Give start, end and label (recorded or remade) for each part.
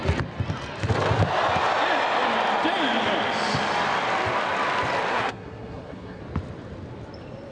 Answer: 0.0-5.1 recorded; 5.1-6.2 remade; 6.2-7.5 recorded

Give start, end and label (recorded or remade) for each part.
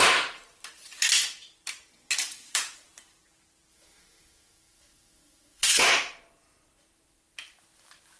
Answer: 0.0-3.7 recorded; 3.7-5.9 remade; 5.9-8.2 recorded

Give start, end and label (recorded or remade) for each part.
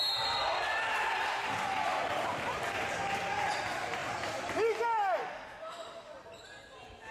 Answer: 0.0-5.2 recorded; 5.2-6.1 remade; 6.1-7.1 recorded